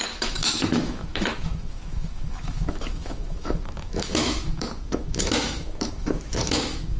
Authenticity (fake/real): fake